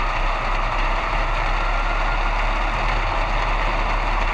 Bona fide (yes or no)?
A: yes